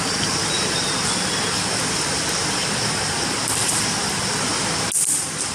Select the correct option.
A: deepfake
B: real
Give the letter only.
B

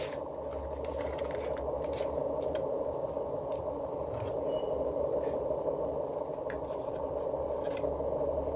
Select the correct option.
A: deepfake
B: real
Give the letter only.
B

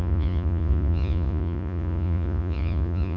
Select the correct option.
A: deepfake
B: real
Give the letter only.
A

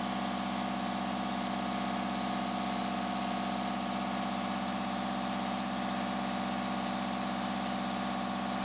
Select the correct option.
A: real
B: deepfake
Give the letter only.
A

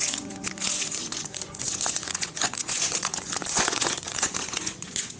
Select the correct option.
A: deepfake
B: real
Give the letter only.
A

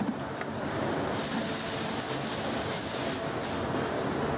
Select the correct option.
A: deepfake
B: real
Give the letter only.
B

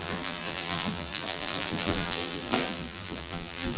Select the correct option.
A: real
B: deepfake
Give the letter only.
B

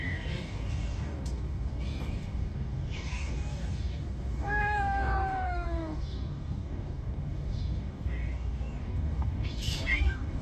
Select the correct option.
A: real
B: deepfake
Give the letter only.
B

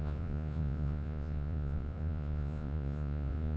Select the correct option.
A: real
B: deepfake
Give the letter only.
B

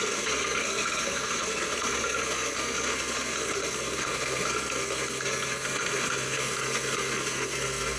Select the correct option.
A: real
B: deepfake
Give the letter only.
B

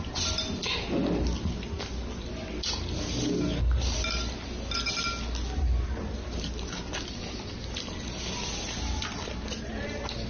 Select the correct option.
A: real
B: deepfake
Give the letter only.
A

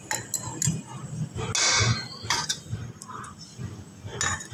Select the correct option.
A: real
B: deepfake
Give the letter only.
A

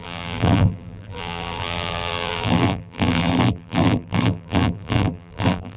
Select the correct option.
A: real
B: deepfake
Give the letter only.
B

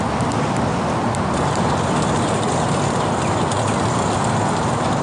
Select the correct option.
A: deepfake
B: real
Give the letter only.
B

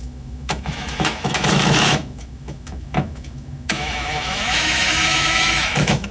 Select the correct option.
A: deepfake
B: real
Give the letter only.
A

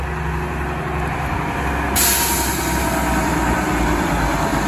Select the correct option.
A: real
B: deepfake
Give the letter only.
A